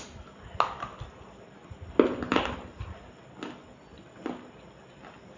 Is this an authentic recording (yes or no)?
yes